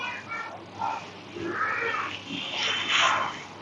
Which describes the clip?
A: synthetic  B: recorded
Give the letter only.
B